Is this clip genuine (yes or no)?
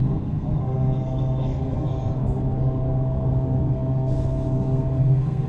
no